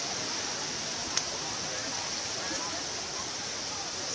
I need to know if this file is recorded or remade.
recorded